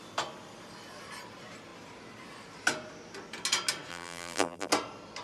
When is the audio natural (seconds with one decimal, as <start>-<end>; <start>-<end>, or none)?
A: 0.0-3.9; 4.7-5.2